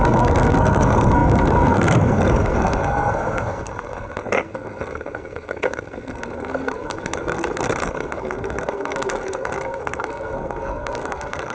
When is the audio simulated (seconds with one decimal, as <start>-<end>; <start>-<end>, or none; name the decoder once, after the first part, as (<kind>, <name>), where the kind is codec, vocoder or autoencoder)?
0.0-11.5 (codec, SNAC)